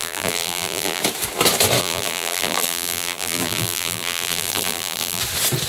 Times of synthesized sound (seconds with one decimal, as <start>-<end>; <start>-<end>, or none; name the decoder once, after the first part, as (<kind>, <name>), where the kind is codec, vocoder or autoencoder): 0.0-1.0 (vocoder, BigVGAN v2); 1.8-5.2

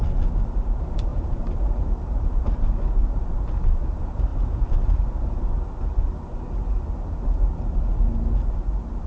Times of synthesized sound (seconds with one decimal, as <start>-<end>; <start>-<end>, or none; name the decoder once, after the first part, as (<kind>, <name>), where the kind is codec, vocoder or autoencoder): 1.1-2.4 (vocoder, BigVGAN v2); 4.3-5.4